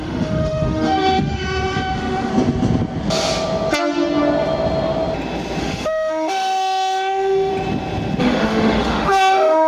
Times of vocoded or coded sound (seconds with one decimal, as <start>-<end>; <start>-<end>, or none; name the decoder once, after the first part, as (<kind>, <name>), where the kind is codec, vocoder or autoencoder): 0.0-2.3 (autoencoder, DAC-VAE); 5.6-7.5; 8.2-9.7